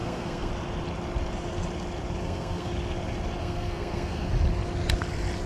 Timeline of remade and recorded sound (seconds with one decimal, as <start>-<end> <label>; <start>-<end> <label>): 0.0-0.5 remade; 0.5-2.2 recorded; 2.2-2.7 remade; 2.7-3.4 recorded; 3.4-4.3 remade; 4.3-5.5 recorded